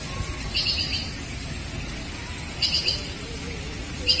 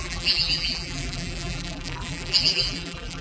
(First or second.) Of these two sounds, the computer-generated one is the second